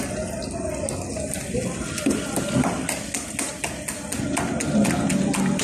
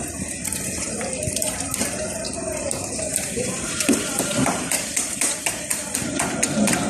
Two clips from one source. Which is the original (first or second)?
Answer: first